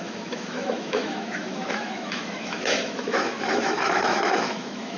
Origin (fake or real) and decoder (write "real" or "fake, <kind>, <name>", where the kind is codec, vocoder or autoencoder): fake, autoencoder, DAC-VAE